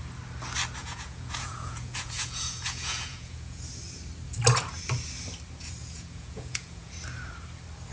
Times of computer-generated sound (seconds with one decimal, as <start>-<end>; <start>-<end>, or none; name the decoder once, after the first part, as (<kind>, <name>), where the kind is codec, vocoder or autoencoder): 0.8-3.6 (vocoder, Vocos); 5.8-6.9